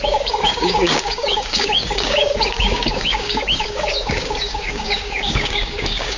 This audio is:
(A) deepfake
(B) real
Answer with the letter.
A